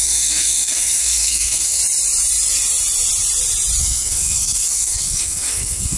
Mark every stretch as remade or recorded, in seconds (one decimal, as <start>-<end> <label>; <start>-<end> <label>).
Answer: 0.0-1.8 remade; 1.8-3.8 recorded; 3.8-6.0 remade